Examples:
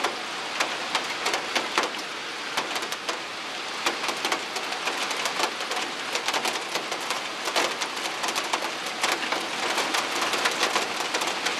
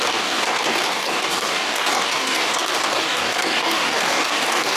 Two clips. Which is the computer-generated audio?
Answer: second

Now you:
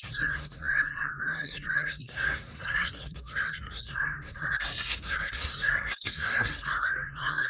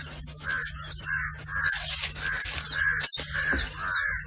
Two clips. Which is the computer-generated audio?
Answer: first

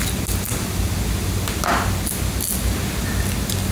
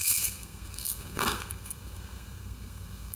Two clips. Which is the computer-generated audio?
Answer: second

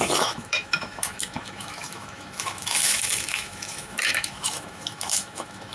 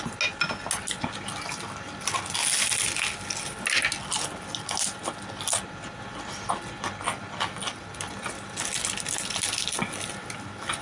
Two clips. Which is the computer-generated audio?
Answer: first